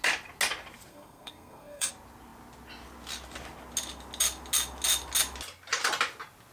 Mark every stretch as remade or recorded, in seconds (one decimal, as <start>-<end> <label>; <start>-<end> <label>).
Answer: 0.0-0.9 recorded; 0.9-1.9 remade; 1.9-6.5 recorded